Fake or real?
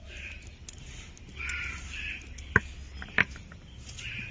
real